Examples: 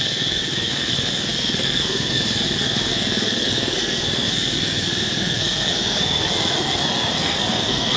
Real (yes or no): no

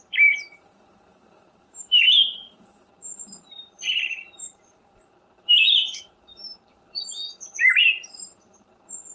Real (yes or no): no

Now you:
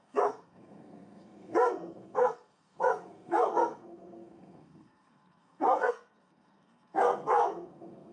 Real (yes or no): no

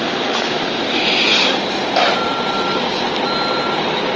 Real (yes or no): yes